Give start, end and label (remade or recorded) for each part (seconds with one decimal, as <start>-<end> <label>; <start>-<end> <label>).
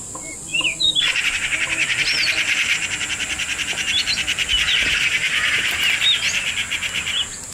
0.0-7.5 recorded